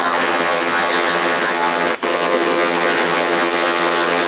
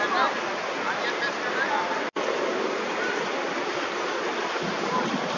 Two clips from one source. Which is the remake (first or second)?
first